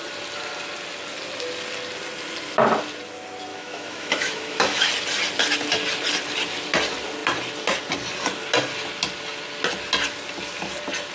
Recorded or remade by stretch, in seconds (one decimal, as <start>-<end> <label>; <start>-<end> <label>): 0.0-3.5 recorded; 3.5-4.9 remade; 4.9-11.1 recorded